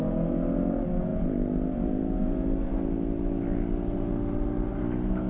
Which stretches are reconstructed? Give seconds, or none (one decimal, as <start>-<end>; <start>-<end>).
none